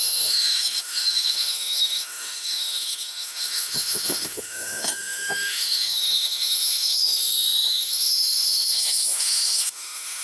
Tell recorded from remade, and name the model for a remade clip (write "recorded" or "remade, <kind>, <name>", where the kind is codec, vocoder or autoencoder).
remade, autoencoder, DAC-VAE